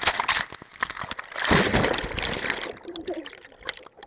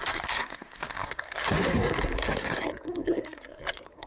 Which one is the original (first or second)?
first